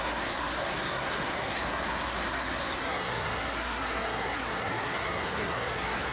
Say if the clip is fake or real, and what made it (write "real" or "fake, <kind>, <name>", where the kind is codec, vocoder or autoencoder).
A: fake, codec, SNAC